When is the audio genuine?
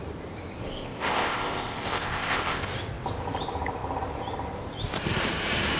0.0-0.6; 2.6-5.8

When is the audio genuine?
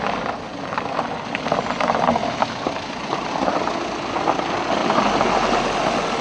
0.0-6.2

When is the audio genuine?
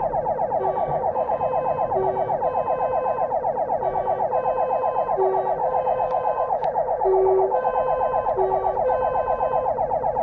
0.0-0.8; 1.4-5.6; 7.7-10.2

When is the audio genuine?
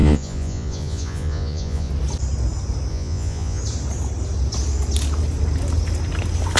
1.9-2.9; 3.6-6.6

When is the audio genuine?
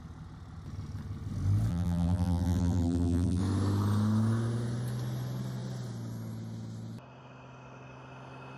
0.0-1.7; 3.4-8.6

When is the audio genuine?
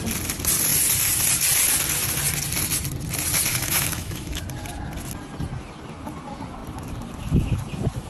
0.0-3.5; 4.4-8.1